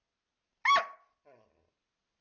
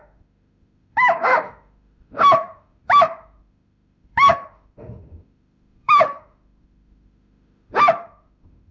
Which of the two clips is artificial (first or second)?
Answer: second